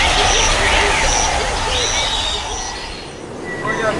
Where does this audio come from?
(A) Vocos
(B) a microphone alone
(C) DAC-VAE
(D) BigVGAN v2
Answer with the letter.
B